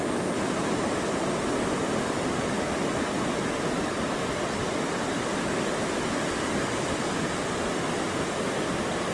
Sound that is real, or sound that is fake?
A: real